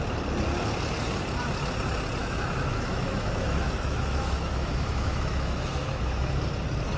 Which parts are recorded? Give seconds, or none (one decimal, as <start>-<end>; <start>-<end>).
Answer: 0.0-2.2; 6.4-7.0